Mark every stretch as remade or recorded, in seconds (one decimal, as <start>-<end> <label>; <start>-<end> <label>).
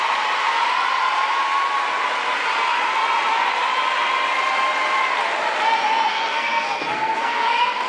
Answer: 0.0-6.1 recorded; 6.1-7.9 remade